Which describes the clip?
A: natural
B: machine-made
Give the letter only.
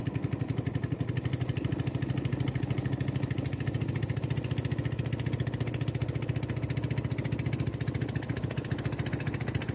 A